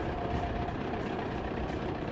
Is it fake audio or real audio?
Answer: fake